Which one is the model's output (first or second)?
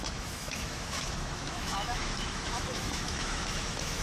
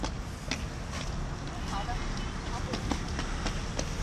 first